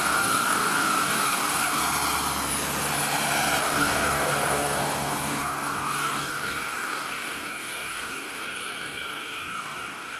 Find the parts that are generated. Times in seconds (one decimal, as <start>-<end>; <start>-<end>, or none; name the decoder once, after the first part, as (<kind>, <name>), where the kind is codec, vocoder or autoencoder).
0.0-1.8 (codec, DAC); 3.6-10.2